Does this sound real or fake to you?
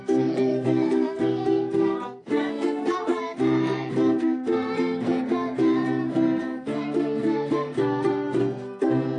fake